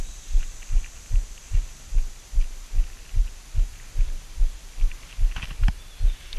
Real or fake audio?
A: real